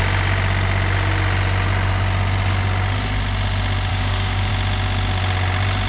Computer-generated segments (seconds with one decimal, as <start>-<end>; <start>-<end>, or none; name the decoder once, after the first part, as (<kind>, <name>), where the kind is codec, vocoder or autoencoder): 3.9-4.5 (codec, DAC)

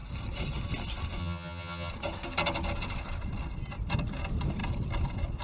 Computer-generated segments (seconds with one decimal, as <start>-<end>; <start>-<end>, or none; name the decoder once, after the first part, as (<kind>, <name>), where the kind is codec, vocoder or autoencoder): 1.2-1.9 (vocoder, HiFi-GAN)

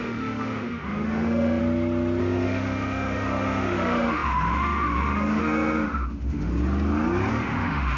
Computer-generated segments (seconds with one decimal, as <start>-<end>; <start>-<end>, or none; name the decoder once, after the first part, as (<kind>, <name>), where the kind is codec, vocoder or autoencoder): 0.0-1.6 (autoencoder, DAC-VAE); 2.2-6.5; 7.3-8.0

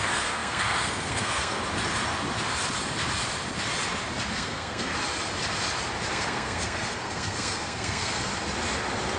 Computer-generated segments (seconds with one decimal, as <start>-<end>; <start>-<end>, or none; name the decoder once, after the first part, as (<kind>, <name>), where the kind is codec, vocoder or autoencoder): 0.0-1.6 (codec, SNAC); 4.3-4.9; 6.1-8.3

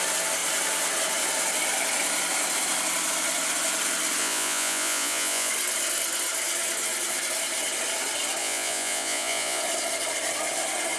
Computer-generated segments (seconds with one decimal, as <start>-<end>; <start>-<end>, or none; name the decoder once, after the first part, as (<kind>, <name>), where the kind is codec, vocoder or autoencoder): 4.2-5.5 (vocoder, Vocos); 8.4-9.6

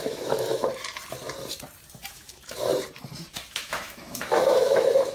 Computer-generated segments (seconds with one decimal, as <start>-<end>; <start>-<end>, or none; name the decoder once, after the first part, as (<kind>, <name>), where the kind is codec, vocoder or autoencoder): 0.0-0.7 (autoencoder, DAC-VAE); 2.1-2.7; 3.5-5.1

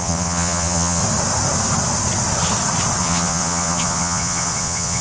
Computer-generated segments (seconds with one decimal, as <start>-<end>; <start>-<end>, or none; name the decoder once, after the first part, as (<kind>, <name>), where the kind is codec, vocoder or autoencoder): 0.0-1.0 (vocoder, Vocos); 3.0-5.0